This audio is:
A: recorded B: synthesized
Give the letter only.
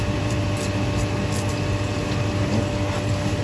A